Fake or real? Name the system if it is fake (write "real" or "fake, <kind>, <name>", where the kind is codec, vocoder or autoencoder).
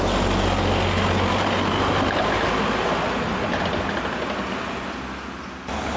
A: real